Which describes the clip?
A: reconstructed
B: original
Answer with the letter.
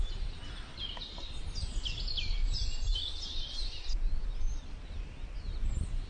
B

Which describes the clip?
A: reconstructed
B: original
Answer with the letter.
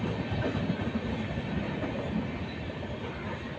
B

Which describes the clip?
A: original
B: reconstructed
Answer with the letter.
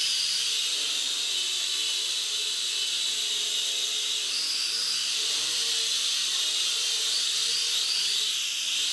B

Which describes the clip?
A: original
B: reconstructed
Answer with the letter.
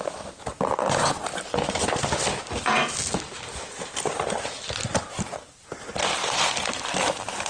A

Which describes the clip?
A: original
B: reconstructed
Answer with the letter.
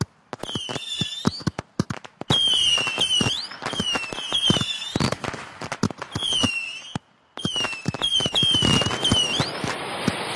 A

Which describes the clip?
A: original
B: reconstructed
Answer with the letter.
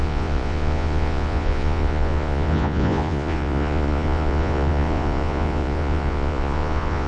B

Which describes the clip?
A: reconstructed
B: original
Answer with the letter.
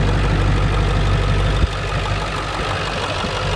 B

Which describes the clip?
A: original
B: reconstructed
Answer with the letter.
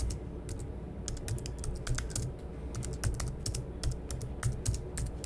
A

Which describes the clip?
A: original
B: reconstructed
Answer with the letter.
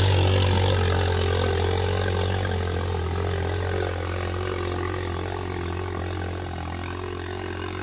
A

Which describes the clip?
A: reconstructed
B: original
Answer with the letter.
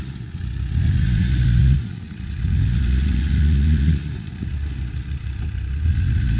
A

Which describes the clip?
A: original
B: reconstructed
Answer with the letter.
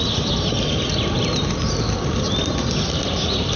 A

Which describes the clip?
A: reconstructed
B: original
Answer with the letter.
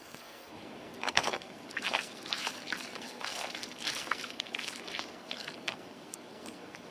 A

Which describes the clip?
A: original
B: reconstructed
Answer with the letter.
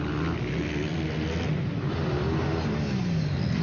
A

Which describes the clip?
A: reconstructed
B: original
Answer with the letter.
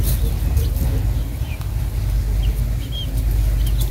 B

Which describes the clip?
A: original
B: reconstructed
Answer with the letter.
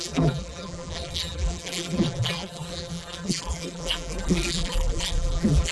B